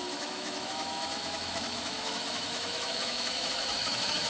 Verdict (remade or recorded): remade